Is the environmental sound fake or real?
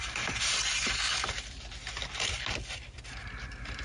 real